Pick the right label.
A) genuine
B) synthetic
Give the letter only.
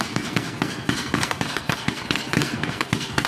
B